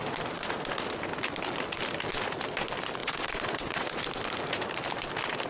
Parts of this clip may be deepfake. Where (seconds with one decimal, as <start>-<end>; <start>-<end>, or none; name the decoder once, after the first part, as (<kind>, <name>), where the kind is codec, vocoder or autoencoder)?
3.0-4.0 (vocoder, Vocos)